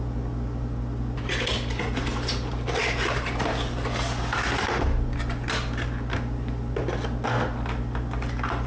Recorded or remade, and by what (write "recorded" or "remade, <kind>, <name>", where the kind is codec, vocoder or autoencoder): recorded